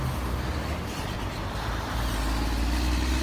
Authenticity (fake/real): real